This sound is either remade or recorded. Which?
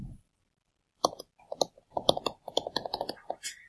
recorded